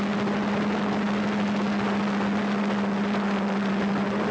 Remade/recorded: recorded